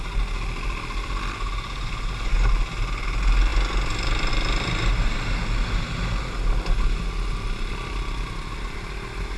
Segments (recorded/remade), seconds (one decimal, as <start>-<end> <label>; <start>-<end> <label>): 0.0-9.4 recorded